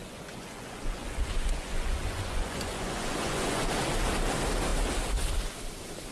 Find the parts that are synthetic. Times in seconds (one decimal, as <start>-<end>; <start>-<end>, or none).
0.0-3.7